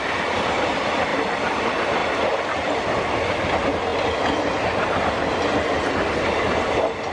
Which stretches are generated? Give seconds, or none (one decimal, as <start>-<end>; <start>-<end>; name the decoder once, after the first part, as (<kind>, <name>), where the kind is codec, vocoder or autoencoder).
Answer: none